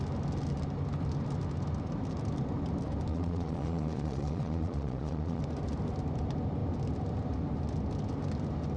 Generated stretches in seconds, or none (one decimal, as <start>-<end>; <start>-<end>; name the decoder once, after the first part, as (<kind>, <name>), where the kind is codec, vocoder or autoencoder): 3.1-5.4 (vocoder, Vocos)